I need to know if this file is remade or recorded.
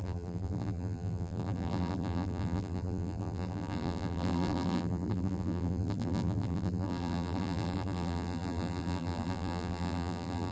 remade